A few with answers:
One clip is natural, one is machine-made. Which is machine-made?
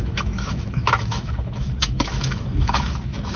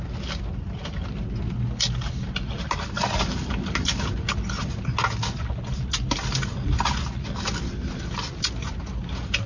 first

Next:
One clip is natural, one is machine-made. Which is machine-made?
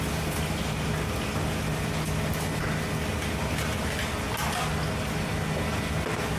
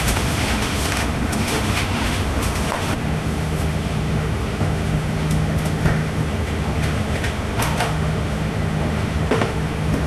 second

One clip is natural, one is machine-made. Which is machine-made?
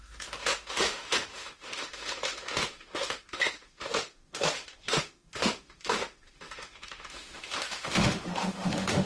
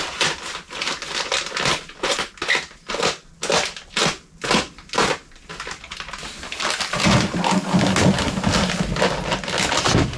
first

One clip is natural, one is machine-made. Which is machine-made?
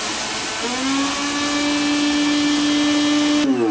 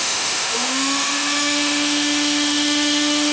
second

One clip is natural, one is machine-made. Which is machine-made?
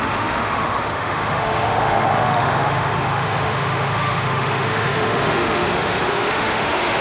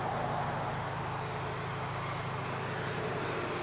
first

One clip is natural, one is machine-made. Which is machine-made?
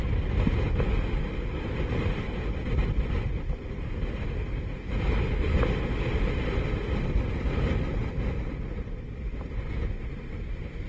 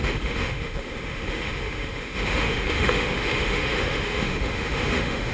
second